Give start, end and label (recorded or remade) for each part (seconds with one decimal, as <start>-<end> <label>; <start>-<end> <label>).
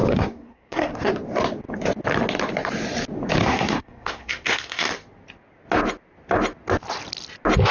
0.0-1.1 remade; 1.1-3.4 recorded; 3.4-4.9 remade; 4.9-7.7 recorded